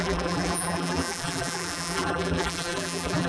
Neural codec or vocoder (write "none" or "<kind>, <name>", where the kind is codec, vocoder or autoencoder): vocoder, BigVGAN v2